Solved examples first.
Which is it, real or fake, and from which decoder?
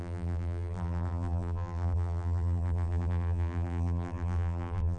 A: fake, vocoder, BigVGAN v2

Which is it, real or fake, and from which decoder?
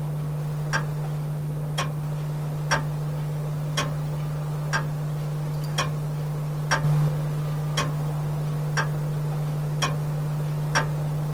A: real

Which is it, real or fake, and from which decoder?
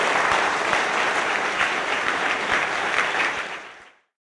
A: fake, vocoder, BigVGAN v2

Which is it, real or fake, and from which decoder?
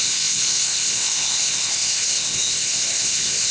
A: fake, codec, ZipCodec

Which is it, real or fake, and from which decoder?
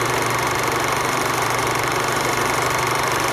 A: fake, vocoder, BigVGAN v2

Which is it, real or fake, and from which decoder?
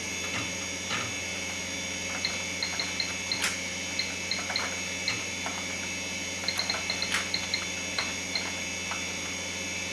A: real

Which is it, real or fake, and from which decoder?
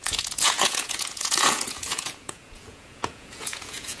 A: fake, vocoder, Vocos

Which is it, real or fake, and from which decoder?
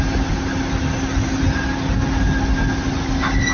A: real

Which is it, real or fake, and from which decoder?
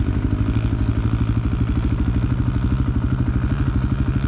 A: real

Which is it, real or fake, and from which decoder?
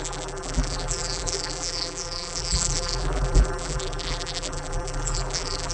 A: fake, vocoder, BigVGAN v2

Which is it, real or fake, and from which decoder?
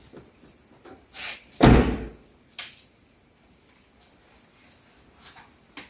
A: real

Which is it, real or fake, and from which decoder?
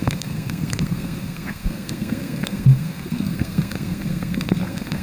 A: fake, codec, SNAC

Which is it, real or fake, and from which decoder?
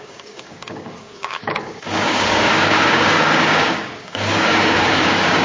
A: fake, codec, DAC